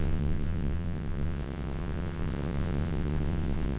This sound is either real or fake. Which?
fake